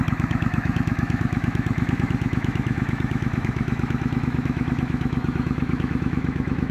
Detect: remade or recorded remade